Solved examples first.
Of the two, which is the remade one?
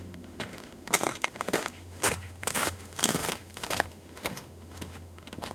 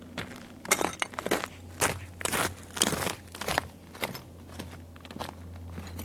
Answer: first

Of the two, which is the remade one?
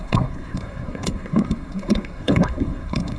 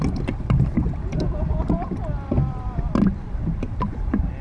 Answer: first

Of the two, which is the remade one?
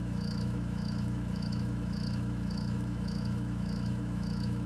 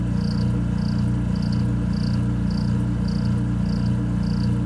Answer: first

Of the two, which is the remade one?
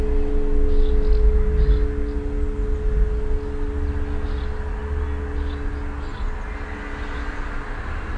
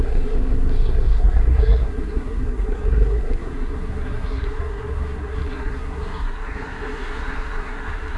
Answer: second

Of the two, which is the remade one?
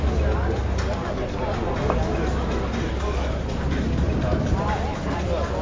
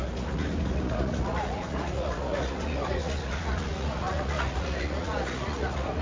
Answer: second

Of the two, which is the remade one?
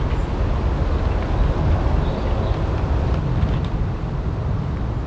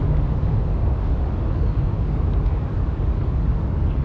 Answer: second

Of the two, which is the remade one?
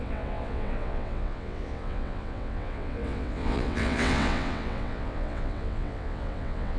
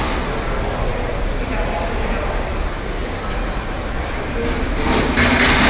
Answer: first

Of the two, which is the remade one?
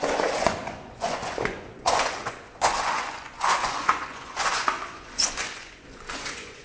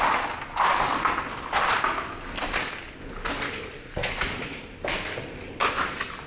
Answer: first